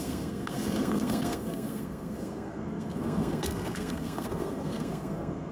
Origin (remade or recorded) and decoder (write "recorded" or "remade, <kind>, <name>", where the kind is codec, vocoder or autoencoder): remade, codec, SNAC